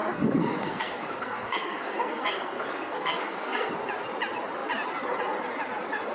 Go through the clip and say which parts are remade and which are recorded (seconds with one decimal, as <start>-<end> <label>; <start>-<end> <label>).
0.0-3.7 remade; 3.7-6.1 recorded